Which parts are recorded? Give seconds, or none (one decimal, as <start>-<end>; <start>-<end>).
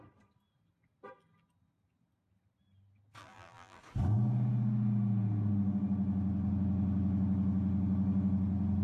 0.0-3.2; 3.8-8.8